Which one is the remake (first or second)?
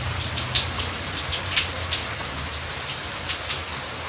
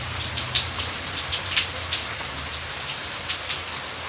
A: second